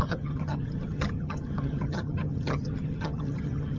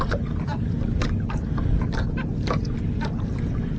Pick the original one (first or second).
second